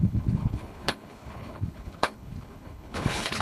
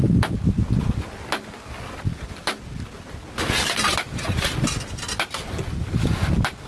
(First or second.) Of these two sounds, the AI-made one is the first